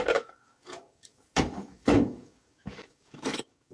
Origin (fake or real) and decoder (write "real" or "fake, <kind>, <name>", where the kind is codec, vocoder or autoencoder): fake, codec, DAC